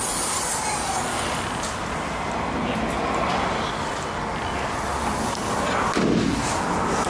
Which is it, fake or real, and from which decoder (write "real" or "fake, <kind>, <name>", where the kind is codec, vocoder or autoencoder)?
real